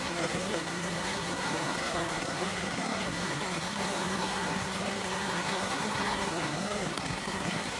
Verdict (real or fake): fake